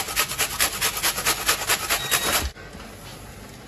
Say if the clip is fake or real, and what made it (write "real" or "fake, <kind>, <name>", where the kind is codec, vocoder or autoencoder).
real